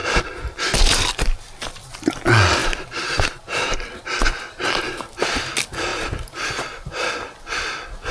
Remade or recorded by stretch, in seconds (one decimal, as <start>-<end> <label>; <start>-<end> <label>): 0.0-2.6 recorded; 2.6-3.9 remade; 3.9-5.9 recorded; 5.9-7.1 remade; 7.1-8.1 recorded